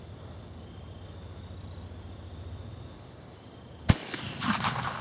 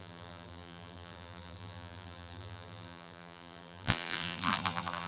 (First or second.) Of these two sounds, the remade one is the second